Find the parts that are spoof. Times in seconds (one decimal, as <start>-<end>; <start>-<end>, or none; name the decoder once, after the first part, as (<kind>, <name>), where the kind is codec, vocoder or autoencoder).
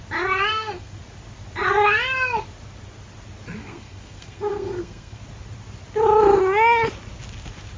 0.5-1.0 (codec, SNAC); 3.6-5.2